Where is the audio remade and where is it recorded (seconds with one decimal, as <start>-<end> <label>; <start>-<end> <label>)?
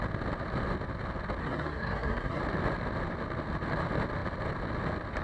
0.0-1.4 recorded; 1.4-2.4 remade; 2.4-5.2 recorded